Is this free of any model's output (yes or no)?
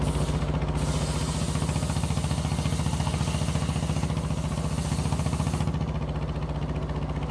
yes